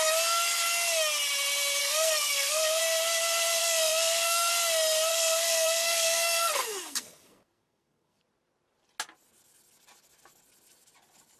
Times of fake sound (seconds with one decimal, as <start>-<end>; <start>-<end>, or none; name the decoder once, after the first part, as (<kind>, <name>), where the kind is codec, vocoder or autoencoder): 1.8-2.8 (codec, SNAC); 3.6-4.5; 5.1-8.2